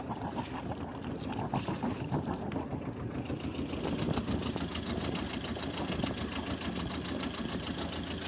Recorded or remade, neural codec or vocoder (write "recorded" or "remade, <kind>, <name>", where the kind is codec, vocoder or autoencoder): recorded